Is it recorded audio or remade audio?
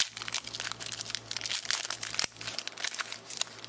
recorded